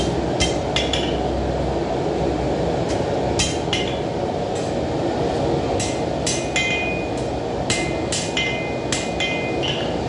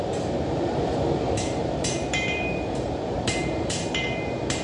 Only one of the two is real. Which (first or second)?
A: first